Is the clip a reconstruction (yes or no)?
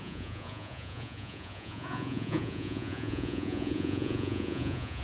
yes